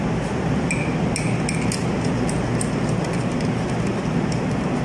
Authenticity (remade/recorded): recorded